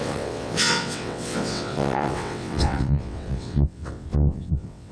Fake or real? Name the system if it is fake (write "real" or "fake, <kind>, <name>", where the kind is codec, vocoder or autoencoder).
fake, vocoder, WaveNeXt